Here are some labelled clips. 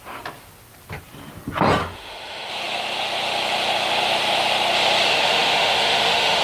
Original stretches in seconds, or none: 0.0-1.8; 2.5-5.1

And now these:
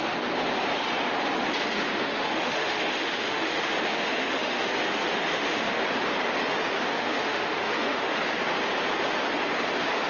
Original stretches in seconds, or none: 0.0-1.9; 4.7-5.3; 5.8-6.9; 8.2-10.1